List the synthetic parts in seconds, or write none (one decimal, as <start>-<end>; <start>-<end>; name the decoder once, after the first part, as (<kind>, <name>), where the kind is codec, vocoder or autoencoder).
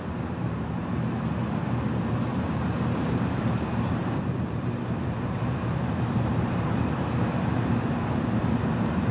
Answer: 2.3-6.8 (vocoder, BigVGAN v2); 7.5-8.4